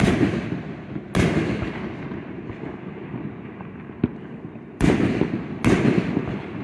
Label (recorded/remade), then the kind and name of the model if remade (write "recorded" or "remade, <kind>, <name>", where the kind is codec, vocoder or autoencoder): recorded